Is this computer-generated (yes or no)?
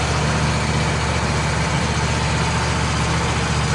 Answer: no